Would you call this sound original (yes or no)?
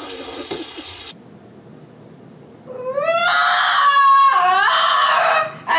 yes